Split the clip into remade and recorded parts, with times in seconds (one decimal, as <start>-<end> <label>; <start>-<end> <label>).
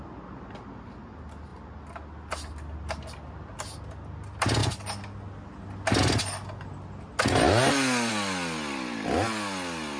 0.0-10.0 recorded